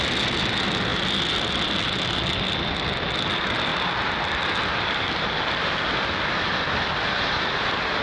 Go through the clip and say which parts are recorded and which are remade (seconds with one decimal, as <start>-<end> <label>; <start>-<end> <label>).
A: 0.0-8.0 recorded